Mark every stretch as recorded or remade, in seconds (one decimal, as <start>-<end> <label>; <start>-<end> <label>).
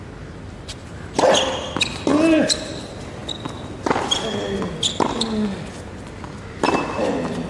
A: 0.0-0.7 recorded; 0.7-1.3 remade; 1.3-7.5 recorded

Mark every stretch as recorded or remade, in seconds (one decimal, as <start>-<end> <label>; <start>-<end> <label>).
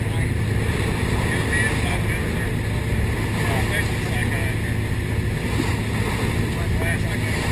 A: 0.0-7.5 recorded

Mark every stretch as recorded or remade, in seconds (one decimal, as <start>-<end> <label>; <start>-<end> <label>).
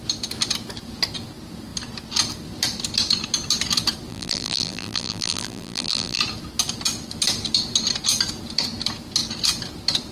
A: 0.0-4.1 recorded; 4.1-6.2 remade; 6.2-10.1 recorded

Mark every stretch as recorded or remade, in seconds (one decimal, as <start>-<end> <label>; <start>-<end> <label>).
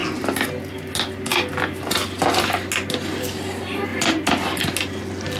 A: 0.0-5.4 recorded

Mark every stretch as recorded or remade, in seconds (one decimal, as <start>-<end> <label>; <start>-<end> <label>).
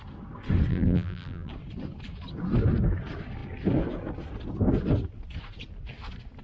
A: 0.0-0.7 recorded; 0.7-1.5 remade; 1.5-6.4 recorded